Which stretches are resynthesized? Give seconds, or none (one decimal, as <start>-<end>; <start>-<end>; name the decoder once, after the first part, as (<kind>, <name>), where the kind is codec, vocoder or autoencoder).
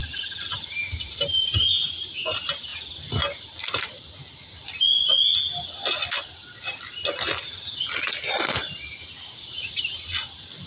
0.0-2.1 (vocoder, BigVGAN v2)